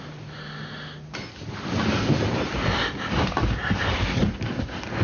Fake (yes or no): no